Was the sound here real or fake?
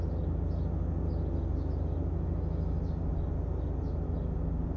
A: real